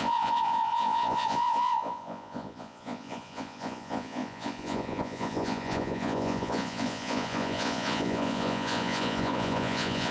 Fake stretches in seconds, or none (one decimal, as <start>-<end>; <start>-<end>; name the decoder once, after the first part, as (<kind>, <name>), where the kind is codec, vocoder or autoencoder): 0.0-10.1 (vocoder, Vocos)